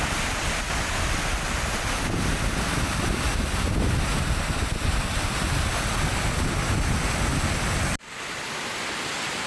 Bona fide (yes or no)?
yes